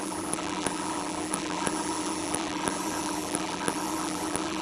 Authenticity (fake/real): fake